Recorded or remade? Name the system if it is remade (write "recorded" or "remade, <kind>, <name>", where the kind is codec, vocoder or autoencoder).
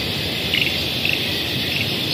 recorded